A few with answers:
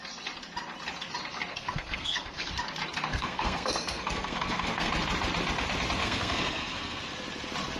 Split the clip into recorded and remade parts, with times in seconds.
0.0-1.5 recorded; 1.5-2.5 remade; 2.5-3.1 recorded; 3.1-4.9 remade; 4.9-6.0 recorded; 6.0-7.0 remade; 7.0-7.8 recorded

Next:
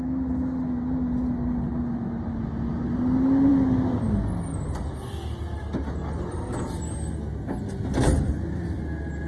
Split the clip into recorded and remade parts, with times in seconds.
0.0-9.3 recorded